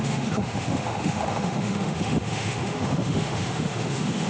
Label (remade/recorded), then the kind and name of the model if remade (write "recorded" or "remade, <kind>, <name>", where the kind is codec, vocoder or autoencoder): remade, autoencoder, DAC-VAE